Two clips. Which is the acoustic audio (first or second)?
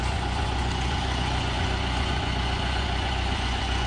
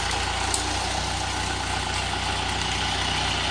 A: second